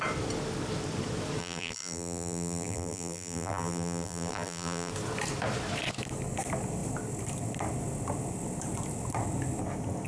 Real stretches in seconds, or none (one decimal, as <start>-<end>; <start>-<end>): 0.0-1.4; 4.9-10.1